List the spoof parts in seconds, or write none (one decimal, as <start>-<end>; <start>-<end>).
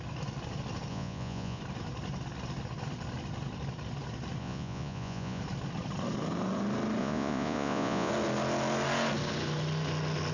0.9-1.6; 4.4-5.4; 7.0-8.1